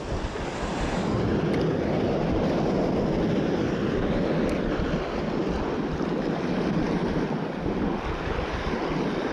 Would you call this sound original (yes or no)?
yes